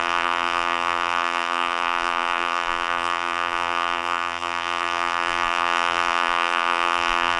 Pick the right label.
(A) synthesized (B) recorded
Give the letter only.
A